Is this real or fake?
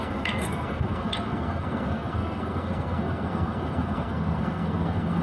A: fake